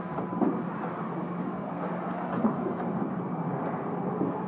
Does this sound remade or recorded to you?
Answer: recorded